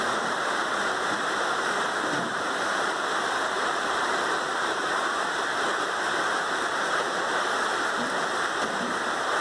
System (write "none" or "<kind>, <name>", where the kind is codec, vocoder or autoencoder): vocoder, BigVGAN v2